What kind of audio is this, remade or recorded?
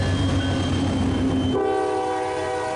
recorded